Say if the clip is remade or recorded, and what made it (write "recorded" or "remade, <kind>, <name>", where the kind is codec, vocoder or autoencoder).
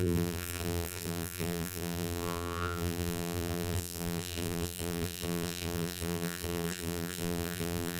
remade, vocoder, BigVGAN v2